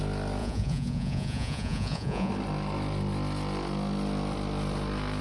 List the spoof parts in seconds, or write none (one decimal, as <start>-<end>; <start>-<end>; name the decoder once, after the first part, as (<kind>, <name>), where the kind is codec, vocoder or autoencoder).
0.4-2.3 (vocoder, Vocos)